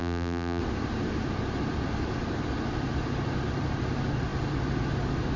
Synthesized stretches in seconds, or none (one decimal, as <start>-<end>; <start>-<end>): 0.0-0.6